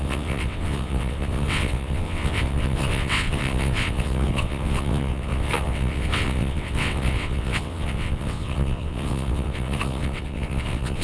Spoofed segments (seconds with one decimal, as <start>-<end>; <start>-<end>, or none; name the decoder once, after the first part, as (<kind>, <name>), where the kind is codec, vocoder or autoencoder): 0.0-11.0 (vocoder, WaveNeXt)